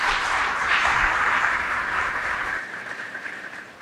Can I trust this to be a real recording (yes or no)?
no